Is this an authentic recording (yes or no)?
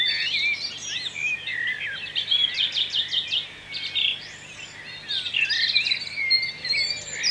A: yes